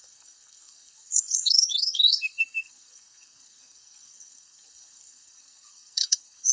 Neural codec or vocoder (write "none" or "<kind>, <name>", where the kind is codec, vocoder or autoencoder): codec, SNAC